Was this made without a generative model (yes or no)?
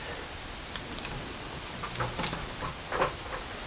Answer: yes